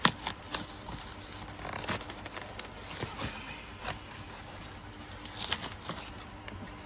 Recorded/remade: recorded